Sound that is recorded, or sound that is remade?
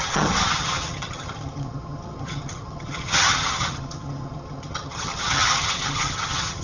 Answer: remade